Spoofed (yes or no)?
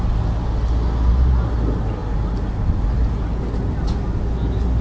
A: no